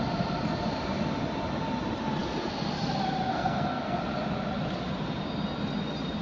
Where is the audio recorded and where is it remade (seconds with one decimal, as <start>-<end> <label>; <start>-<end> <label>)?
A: 0.0-3.3 recorded; 3.3-4.0 remade; 4.0-6.2 recorded